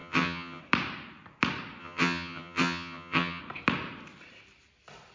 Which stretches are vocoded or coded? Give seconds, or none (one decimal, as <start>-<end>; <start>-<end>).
0.0-0.6; 1.8-3.4